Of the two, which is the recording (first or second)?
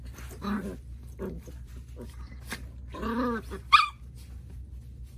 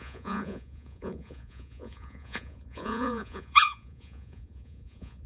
first